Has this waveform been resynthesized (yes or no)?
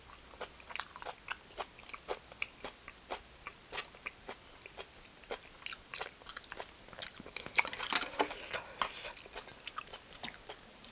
no